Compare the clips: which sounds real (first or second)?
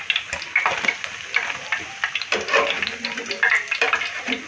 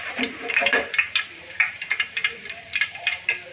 first